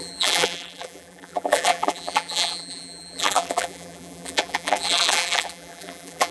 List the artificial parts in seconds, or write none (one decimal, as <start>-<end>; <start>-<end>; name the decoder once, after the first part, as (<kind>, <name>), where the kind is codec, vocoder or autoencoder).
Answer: 0.0-6.3 (vocoder, BigVGAN v2)